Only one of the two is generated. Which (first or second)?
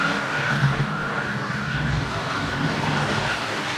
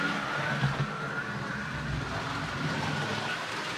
first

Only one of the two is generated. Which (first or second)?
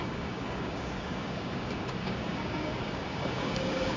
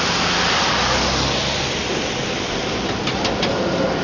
first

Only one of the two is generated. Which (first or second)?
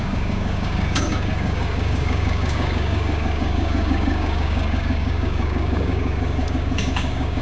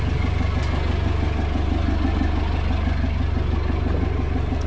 first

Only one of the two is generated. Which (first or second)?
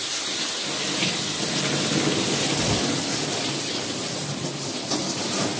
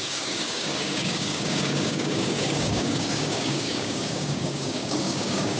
second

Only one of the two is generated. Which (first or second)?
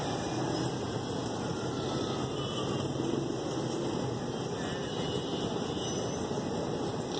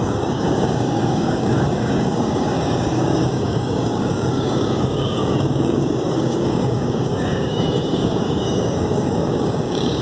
second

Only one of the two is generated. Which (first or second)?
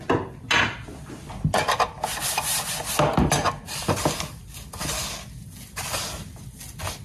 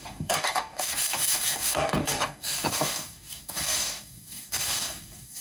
second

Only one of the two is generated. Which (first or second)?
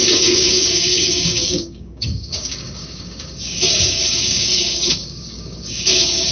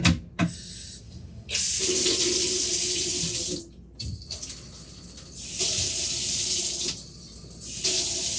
first